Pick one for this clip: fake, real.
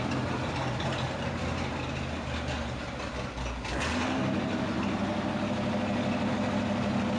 real